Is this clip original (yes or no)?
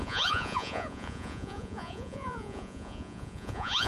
no